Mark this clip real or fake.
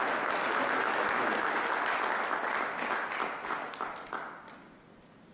real